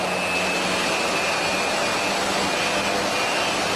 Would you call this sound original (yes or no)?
yes